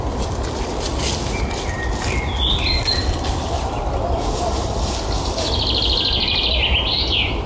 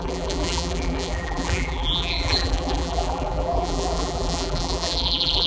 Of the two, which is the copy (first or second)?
second